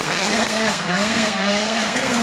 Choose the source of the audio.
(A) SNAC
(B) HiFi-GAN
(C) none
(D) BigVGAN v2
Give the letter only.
A